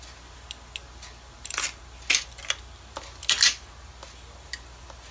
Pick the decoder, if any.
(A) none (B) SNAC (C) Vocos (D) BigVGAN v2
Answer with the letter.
A